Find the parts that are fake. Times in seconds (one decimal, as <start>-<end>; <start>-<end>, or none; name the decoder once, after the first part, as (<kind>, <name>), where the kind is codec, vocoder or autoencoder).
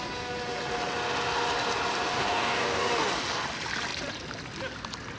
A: 2.1-2.9 (codec, DAC)